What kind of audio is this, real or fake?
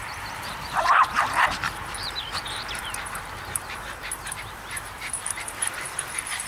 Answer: fake